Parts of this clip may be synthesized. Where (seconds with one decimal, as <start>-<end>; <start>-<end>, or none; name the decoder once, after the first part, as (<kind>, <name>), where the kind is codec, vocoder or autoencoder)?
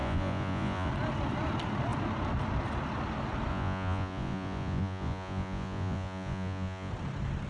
0.0-0.9 (vocoder, Vocos); 3.5-6.9